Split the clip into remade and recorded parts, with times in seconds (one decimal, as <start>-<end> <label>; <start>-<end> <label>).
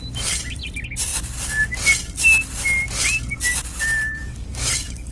0.0-4.2 recorded; 4.2-5.1 remade